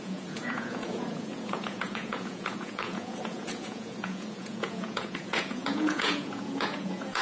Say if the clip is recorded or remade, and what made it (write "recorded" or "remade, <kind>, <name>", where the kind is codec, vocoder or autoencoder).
remade, vocoder, Vocos